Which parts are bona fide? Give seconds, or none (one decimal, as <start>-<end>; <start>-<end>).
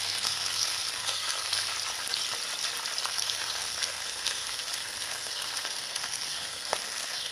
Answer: 1.7-3.0